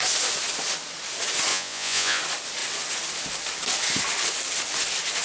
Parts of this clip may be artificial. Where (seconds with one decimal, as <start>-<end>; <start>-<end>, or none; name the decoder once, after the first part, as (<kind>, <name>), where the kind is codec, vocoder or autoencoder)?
1.5-2.2 (vocoder, Vocos)